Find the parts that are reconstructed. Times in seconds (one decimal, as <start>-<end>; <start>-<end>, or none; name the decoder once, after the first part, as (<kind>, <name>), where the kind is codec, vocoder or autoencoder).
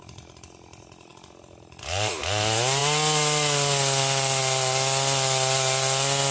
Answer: none